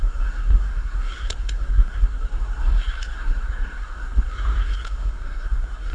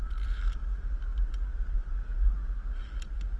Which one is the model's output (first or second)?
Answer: first